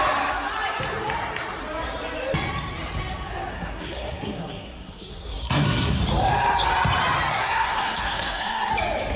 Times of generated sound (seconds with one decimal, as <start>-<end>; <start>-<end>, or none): 3.5-6.0; 7.3-8.7